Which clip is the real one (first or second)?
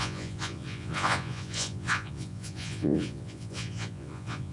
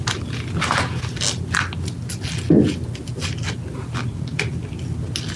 second